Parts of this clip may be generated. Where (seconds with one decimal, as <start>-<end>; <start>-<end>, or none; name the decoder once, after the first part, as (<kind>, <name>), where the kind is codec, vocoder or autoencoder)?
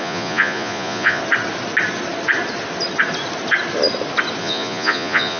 0.0-1.2 (vocoder, Vocos); 4.4-5.4